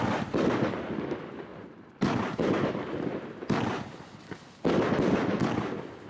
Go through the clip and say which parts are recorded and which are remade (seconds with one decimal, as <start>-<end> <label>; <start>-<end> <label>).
0.0-1.5 recorded; 1.5-2.5 remade; 2.5-6.1 recorded